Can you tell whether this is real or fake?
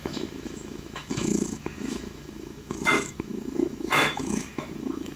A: fake